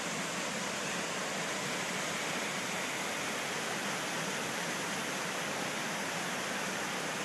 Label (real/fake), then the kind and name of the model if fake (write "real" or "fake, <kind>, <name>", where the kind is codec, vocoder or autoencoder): real